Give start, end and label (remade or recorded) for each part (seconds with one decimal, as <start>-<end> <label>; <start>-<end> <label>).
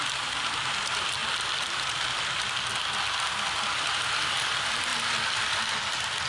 0.0-1.2 recorded; 1.2-2.1 remade; 2.1-4.9 recorded; 4.9-5.7 remade; 5.7-6.3 recorded